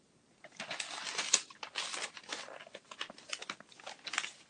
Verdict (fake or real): real